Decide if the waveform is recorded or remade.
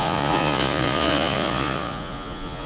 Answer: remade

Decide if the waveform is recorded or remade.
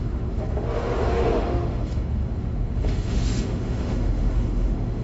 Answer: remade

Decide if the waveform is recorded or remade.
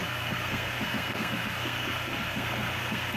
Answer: remade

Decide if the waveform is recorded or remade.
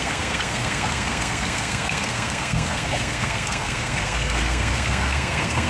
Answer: remade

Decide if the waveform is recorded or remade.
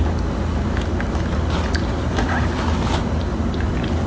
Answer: recorded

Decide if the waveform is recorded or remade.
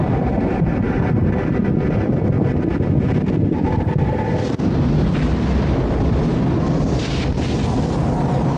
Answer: recorded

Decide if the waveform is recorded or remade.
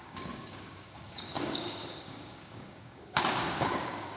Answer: remade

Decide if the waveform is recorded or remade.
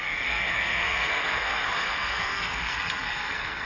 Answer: remade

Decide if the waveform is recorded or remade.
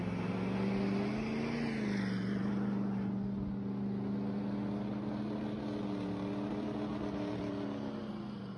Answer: recorded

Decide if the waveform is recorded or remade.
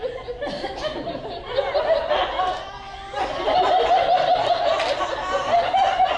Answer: recorded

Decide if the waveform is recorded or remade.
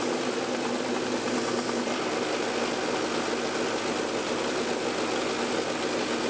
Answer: recorded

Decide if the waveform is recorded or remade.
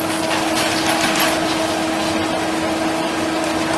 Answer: recorded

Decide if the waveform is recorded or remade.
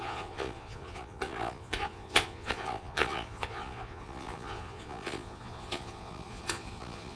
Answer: remade